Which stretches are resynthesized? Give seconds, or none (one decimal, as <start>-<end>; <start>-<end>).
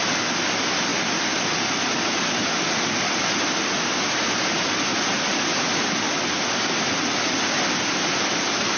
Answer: none